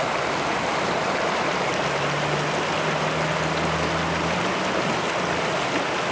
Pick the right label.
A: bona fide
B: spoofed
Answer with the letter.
A